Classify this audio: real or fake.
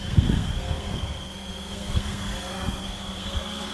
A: fake